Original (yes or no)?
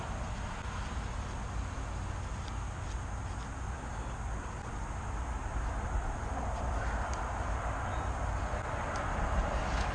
yes